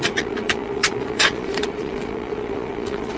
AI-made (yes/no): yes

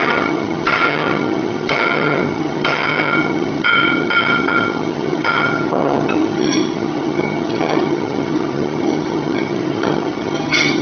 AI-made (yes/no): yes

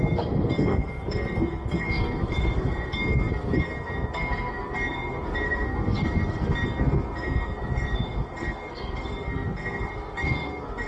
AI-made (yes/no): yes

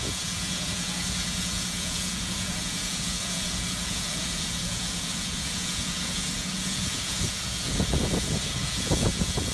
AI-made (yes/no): yes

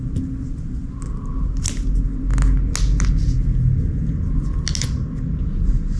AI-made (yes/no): no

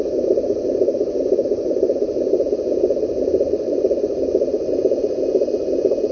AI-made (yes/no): yes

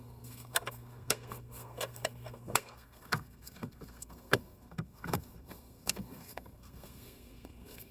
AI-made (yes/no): yes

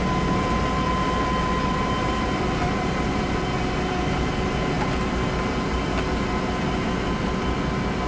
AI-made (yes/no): no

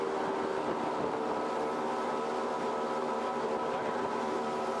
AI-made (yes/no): no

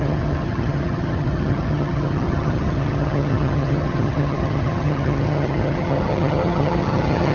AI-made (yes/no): yes